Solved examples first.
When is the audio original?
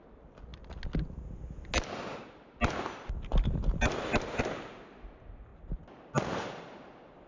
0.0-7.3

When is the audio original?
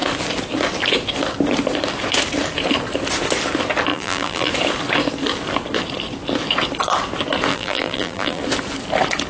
0.0-3.9; 4.5-7.5; 8.4-9.3